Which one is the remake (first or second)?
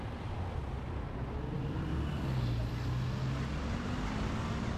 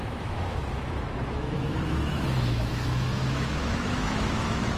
second